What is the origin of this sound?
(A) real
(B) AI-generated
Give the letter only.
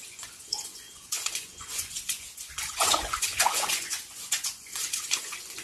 B